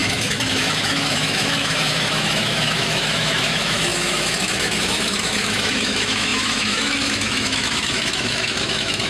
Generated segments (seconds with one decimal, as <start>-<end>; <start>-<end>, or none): 0.0-9.1